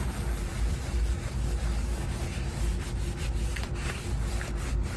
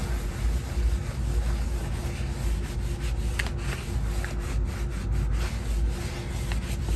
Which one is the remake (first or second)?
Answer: first